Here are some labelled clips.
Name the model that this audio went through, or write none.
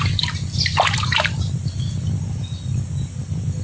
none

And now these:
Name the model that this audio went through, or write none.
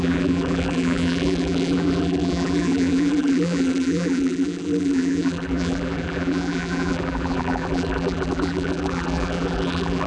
vocoder, BigVGAN v2